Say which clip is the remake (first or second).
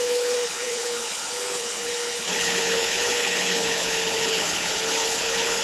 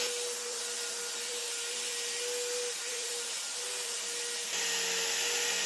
first